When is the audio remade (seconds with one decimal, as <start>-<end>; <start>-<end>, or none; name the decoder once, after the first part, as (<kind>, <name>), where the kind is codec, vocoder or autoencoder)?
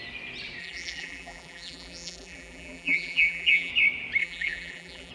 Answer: 0.6-3.7 (vocoder, BigVGAN v2); 4.2-5.1